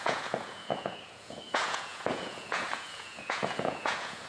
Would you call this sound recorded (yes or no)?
no